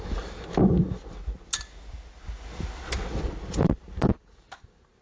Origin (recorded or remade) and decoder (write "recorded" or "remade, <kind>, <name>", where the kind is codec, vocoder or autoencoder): recorded